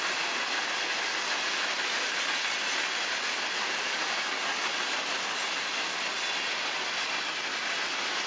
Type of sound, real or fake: real